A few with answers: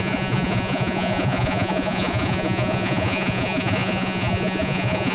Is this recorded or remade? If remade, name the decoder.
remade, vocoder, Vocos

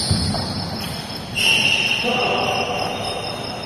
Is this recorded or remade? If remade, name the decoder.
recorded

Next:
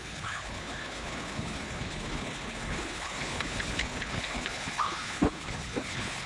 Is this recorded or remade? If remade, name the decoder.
remade, codec, HILCodec